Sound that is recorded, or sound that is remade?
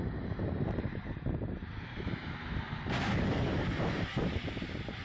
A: remade